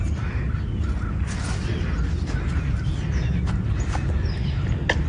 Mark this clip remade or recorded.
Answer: recorded